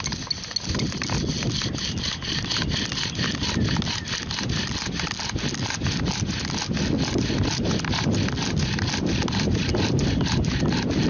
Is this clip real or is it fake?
real